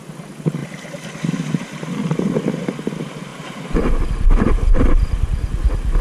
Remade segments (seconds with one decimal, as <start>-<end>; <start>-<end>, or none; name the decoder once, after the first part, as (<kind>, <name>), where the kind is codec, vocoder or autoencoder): none